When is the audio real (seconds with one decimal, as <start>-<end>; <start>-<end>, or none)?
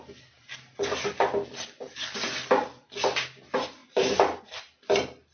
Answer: 0.0-3.8; 4.4-5.3